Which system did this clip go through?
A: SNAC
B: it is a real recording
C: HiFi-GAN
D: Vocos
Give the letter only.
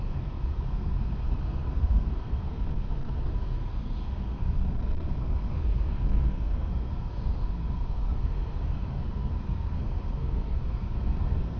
A